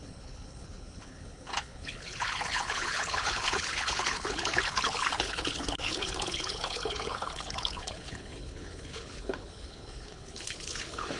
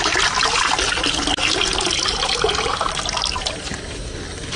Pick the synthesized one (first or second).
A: first